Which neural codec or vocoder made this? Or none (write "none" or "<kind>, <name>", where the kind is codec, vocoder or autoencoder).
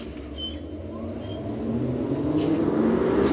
none